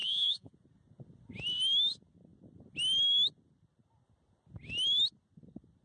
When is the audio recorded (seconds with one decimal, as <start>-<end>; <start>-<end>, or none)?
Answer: 0.5-5.8

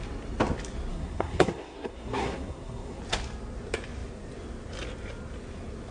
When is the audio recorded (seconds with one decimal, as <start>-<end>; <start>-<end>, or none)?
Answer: 0.0-0.9; 3.0-5.9

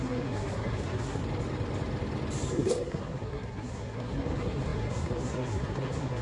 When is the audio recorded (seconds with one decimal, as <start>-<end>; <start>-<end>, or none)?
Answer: 1.2-2.5

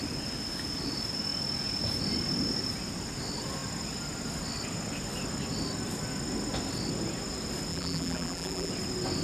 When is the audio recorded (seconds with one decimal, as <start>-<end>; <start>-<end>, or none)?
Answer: 0.0-7.7; 8.7-9.2